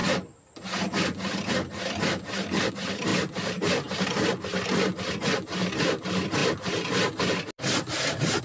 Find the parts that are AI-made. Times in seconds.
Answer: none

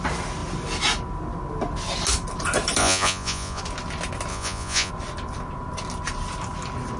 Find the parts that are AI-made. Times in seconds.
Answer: 2.8-3.6 (vocoder, Vocos); 4.3-4.9